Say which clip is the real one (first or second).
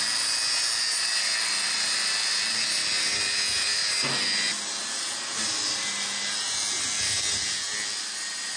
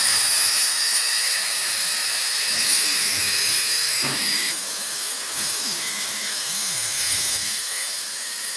first